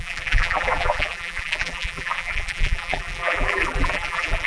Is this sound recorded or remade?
remade